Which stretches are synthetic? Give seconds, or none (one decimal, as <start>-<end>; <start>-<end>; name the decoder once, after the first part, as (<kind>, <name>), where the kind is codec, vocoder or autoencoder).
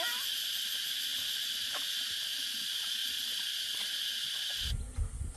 none